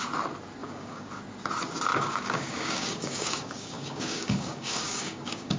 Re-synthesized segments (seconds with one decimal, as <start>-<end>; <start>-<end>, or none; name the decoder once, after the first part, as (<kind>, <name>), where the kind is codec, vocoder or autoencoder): 0.6-1.1 (codec, DAC); 1.9-5.6